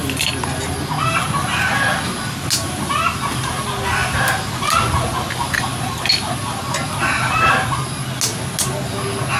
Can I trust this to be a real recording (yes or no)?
yes